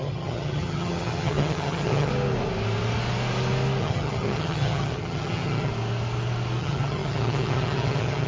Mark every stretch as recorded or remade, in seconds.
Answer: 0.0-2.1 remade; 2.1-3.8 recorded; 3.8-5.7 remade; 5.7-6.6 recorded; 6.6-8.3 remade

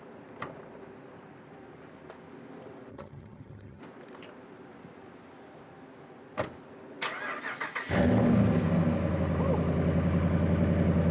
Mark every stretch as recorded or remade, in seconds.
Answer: 0.0-2.9 recorded; 2.9-3.8 remade; 3.8-11.1 recorded

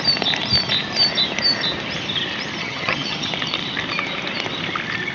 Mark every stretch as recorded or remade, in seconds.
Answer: 0.0-2.6 recorded; 2.6-3.3 remade; 3.3-5.1 recorded

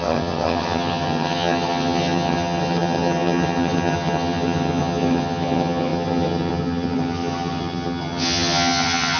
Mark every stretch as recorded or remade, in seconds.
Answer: 0.0-9.2 remade

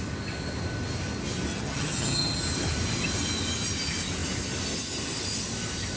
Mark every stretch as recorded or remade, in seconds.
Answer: 0.0-1.5 recorded; 1.5-2.4 remade; 2.4-6.0 recorded

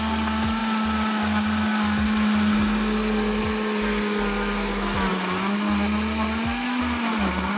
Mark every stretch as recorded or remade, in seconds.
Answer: 0.0-7.6 recorded